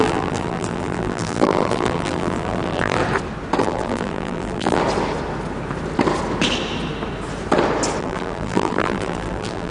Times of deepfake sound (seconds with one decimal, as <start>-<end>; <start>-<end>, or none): 0.0-3.0; 3.6-4.8; 8.0-9.7